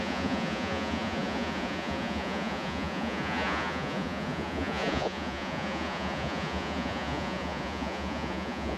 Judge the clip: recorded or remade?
remade